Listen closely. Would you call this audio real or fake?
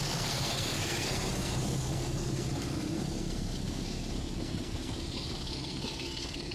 fake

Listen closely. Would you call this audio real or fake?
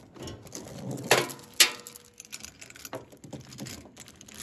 real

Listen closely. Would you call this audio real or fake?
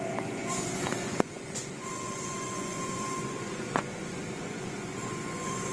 fake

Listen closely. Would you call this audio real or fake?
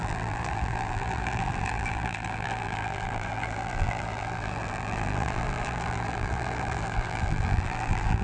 fake